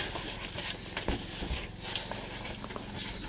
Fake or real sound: real